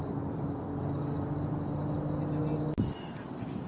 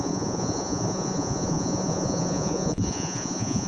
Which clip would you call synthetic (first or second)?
second